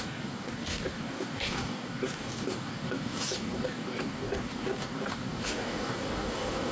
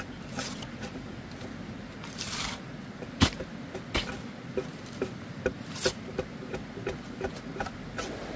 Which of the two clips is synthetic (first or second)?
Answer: first